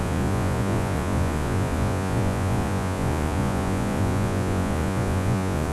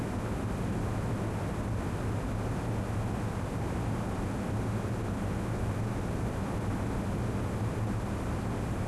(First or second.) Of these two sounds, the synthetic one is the first